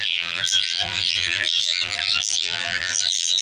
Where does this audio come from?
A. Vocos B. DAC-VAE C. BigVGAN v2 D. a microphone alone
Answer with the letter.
C